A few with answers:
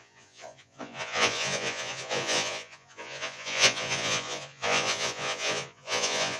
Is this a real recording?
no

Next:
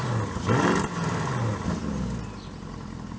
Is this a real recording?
yes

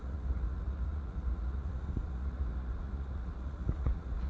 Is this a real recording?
no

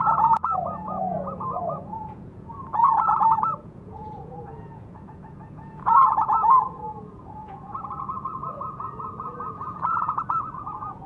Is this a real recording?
no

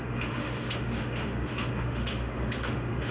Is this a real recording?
no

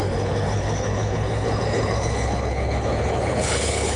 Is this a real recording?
no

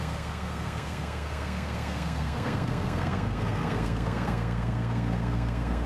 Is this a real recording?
no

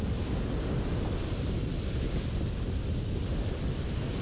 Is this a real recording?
yes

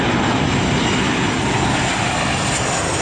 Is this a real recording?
yes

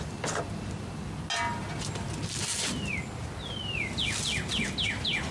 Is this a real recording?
yes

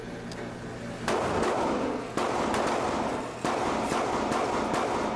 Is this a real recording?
yes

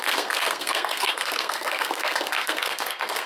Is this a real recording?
no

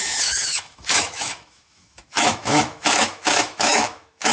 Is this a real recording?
no